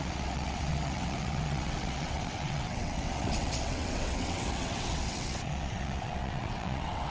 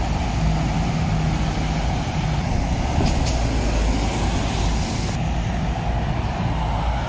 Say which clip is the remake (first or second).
first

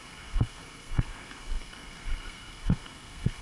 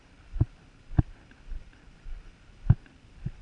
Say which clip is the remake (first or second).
first